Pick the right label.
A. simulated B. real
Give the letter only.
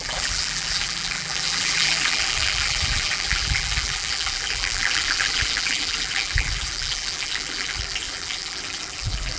A